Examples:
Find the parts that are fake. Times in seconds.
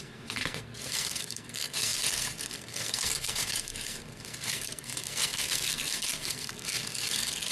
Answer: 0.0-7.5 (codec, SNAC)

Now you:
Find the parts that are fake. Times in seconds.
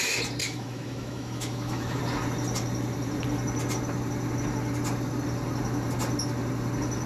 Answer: 0.4-2.0 (autoencoder, DAC-VAE)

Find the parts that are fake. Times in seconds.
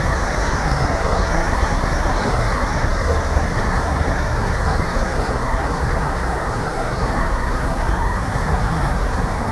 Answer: 0.0-9.5 (codec, SNAC)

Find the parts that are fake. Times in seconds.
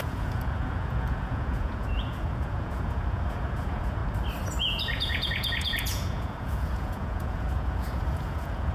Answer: 0.0-4.0 (vocoder, Vocos); 4.6-8.7